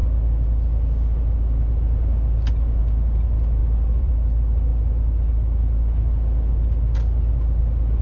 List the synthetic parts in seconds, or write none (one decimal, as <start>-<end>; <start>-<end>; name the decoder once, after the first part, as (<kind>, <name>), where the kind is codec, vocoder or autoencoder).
3.6-4.1 (vocoder, BigVGAN v2)